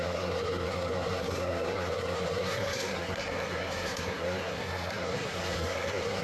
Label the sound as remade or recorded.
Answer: remade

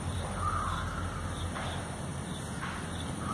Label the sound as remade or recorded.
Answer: recorded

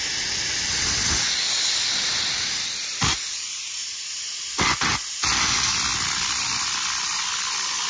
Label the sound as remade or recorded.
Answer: recorded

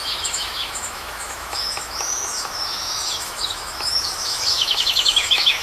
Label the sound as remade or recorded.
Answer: remade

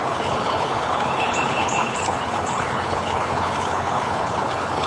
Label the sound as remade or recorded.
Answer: remade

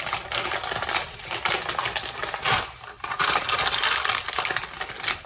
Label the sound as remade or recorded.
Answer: recorded